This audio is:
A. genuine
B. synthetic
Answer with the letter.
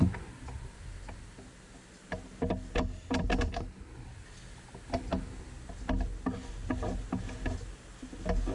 A